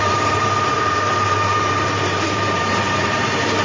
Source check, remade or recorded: remade